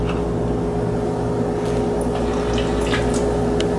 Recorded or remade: recorded